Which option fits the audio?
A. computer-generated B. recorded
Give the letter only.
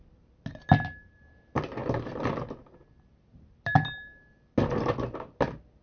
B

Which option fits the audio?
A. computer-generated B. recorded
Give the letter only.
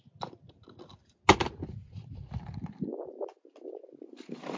B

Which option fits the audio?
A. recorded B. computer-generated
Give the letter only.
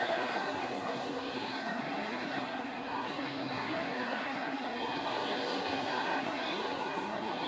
B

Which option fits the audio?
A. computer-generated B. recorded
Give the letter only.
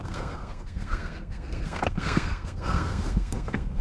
A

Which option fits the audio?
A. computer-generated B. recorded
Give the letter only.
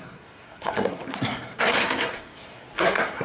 A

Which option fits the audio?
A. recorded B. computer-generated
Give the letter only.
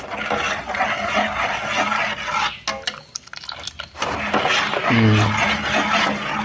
A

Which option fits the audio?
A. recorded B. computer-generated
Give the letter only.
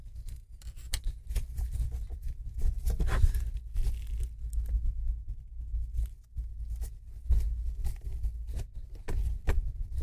A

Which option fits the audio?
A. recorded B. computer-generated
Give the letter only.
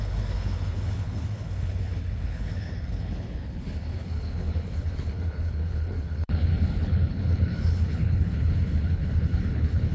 B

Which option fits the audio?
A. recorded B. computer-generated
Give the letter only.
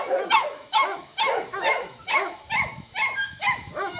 B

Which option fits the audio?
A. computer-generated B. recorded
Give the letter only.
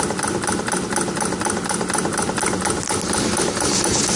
B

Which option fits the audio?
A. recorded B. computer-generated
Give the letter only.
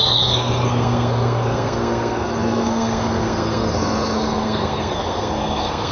B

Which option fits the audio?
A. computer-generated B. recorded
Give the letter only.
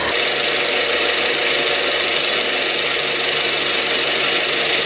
B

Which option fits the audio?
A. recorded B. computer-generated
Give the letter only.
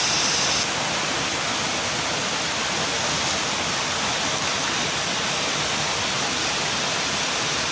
A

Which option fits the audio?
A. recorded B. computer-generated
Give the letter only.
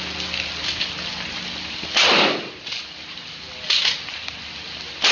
A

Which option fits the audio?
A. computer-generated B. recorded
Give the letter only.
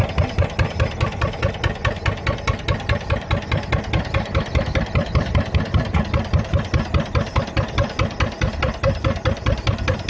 B